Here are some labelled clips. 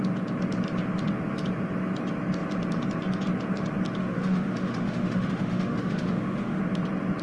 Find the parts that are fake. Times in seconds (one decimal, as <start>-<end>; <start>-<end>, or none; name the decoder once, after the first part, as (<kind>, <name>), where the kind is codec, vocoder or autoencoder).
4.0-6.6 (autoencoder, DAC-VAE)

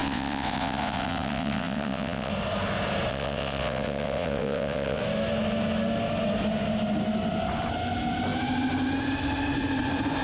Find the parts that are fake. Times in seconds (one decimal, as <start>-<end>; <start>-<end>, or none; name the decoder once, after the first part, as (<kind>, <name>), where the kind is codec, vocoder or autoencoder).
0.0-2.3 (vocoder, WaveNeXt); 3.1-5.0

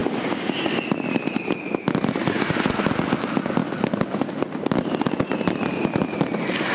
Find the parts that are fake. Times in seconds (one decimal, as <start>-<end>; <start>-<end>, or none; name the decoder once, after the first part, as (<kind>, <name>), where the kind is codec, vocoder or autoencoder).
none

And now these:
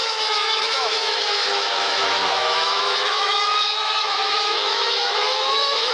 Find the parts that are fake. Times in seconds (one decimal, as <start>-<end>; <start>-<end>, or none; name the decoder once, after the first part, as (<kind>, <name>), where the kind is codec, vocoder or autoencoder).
0.0-5.9 (autoencoder, DAC-VAE)

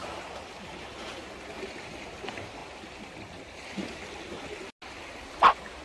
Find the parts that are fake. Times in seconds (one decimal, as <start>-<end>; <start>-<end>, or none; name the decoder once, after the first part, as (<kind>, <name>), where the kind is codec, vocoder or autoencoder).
2.6-4.4 (vocoder, BigVGAN v2)

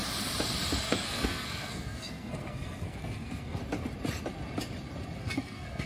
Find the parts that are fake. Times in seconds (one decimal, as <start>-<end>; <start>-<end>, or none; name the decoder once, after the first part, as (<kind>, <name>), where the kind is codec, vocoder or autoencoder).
0.8-3.6 (codec, SNAC); 5.2-5.9